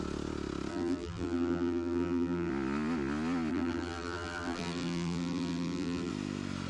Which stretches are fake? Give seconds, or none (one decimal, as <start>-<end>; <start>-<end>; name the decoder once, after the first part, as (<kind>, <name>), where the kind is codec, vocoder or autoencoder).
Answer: 0.7-2.5 (vocoder, BigVGAN v2); 3.5-6.1